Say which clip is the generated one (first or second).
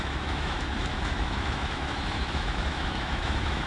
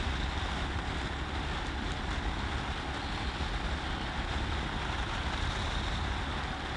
first